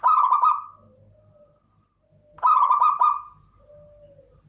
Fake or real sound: real